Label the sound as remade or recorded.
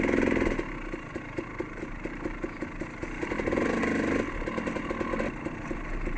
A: recorded